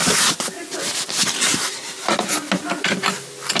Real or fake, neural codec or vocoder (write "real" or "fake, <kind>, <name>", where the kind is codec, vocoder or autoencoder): real